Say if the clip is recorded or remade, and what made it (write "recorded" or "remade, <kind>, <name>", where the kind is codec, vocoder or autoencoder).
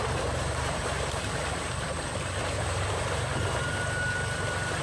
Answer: remade, vocoder, BigVGAN v2